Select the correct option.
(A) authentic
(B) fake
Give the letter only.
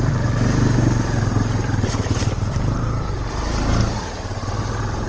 B